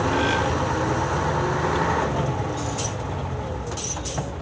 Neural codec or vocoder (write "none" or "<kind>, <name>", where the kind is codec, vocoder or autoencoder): none